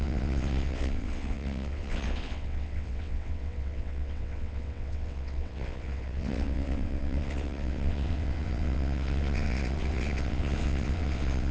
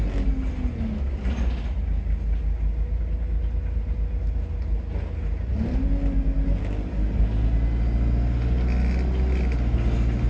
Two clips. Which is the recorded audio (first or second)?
second